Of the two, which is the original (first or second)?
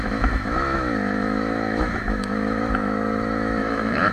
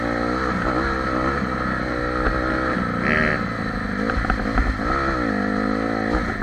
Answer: second